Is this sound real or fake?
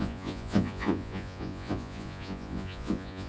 fake